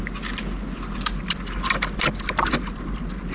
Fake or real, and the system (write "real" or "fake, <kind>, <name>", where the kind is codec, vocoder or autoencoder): real